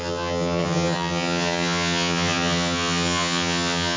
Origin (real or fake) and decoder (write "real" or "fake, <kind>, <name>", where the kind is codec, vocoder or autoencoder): fake, vocoder, HiFi-GAN